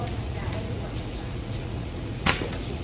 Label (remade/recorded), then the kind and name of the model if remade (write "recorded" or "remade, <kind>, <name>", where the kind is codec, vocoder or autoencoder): remade, vocoder, Vocos